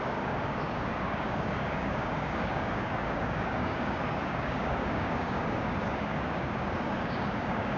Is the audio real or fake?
fake